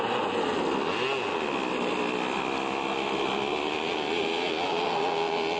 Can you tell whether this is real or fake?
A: real